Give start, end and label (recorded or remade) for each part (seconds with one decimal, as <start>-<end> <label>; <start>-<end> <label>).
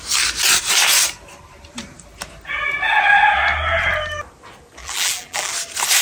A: 0.0-4.8 recorded; 4.8-5.5 remade; 5.5-6.0 recorded